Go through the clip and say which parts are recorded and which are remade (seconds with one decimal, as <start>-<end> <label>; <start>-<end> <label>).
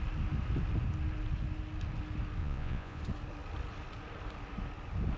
0.0-2.4 recorded; 2.4-3.0 remade; 3.0-5.2 recorded